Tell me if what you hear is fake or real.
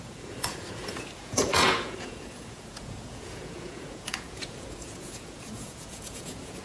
fake